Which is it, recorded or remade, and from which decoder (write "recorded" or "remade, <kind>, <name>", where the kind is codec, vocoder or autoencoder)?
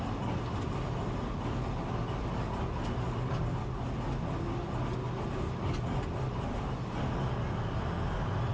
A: recorded